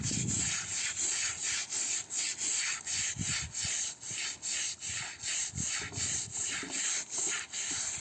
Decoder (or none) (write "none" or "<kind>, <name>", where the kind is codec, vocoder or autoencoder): none